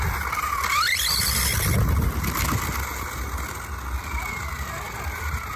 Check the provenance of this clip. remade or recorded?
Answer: recorded